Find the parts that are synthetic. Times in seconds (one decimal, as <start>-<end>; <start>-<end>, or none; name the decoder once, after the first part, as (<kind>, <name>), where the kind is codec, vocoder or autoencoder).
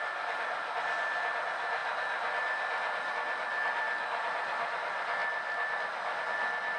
none